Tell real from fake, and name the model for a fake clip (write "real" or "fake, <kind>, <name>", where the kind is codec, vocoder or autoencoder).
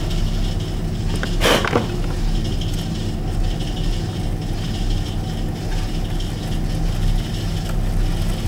real